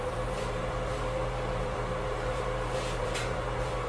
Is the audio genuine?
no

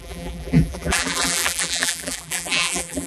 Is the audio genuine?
no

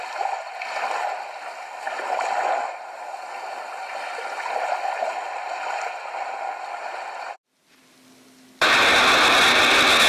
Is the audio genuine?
yes